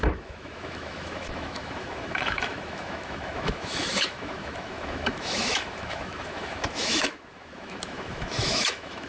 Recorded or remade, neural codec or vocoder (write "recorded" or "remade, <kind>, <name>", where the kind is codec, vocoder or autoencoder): remade, autoencoder, DAC-VAE